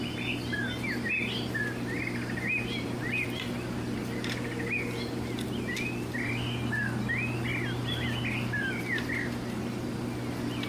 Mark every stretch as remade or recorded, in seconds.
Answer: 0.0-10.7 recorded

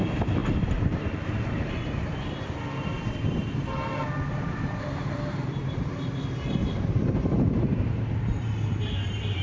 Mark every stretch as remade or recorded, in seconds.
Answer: 0.0-9.4 remade